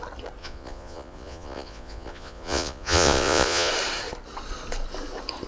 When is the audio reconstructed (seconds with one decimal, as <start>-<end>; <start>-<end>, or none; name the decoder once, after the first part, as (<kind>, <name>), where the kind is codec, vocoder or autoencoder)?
0.4-3.7 (vocoder, Vocos)